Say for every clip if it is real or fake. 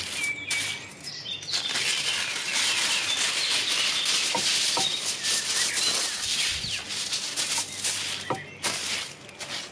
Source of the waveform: real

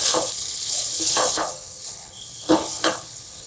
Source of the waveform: fake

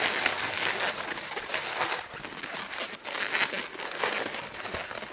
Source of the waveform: real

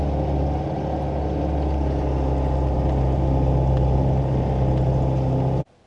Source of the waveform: real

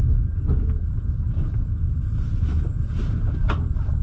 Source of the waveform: real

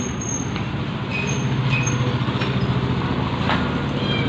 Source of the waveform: real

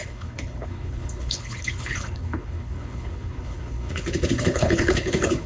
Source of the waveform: fake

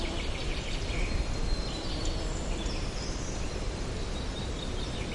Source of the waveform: real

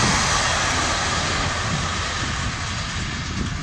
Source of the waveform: real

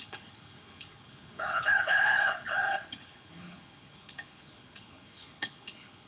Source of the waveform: fake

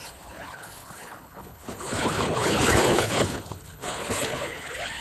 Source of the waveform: fake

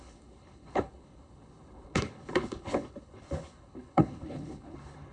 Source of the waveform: fake